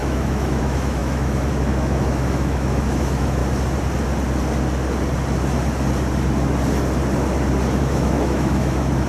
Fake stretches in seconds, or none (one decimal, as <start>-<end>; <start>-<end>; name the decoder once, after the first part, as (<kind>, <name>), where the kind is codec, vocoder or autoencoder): 0.0-3.4 (autoencoder, DAC-VAE); 7.8-9.1